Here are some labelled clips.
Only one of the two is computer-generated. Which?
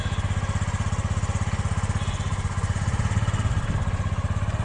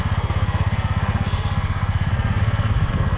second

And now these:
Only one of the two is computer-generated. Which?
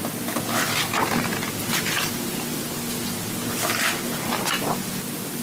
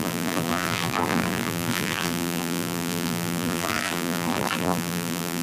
second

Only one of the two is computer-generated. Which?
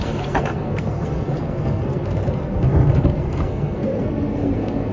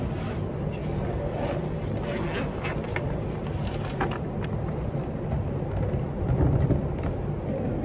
first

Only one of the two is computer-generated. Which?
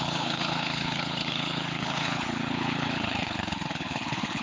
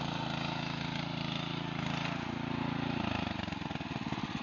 first